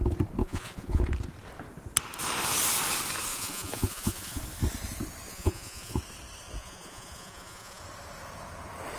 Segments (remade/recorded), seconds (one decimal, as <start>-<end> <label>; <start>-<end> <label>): 0.0-0.4 recorded; 0.4-1.0 remade; 1.0-3.3 recorded; 3.3-4.4 remade; 4.4-5.3 recorded; 5.3-6.0 remade; 6.0-6.6 recorded; 6.6-7.8 remade; 7.8-9.0 recorded